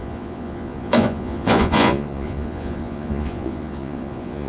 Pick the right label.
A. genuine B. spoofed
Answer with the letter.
B